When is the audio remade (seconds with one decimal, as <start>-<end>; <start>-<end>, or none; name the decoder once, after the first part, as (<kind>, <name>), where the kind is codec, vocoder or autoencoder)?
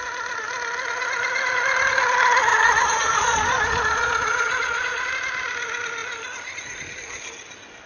2.5-5.1 (vocoder, Vocos)